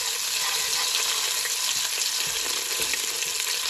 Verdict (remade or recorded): recorded